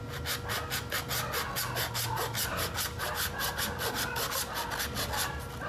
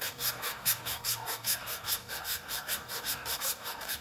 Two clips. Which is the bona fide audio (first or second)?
first